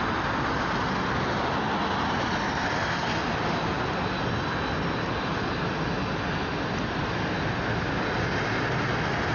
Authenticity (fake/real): real